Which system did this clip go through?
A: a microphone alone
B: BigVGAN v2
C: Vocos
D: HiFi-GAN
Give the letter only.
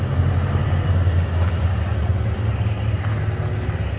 A